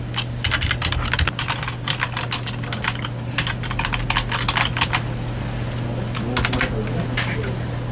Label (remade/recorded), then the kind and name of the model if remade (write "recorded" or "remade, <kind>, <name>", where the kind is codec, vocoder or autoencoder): recorded